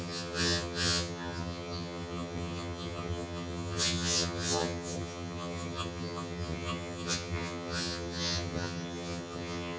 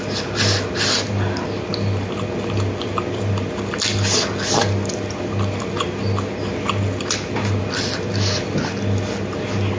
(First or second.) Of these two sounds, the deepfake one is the first